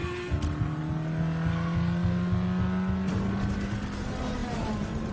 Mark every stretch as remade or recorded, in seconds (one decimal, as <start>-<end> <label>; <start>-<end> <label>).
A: 0.0-5.1 recorded